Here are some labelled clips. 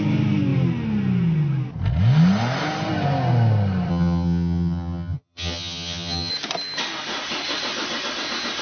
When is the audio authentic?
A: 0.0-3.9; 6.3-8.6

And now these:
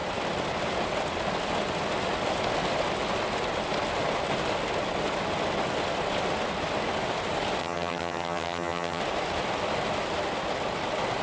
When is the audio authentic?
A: 0.0-7.6; 9.0-11.2

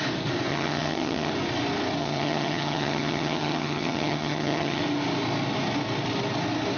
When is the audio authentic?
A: 0.0-0.5; 1.3-2.0; 4.8-6.8

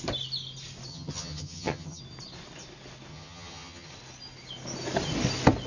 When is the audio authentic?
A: 0.0-0.9; 2.0-3.1; 3.9-5.7